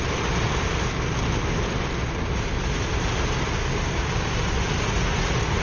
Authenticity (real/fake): real